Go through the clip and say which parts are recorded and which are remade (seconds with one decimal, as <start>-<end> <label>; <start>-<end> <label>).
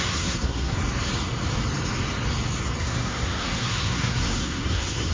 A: 0.0-0.8 remade; 0.8-2.8 recorded; 2.8-5.1 remade